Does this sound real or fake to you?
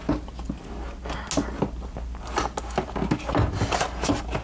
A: real